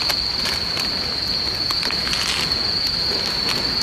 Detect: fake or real real